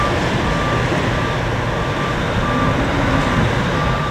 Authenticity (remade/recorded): recorded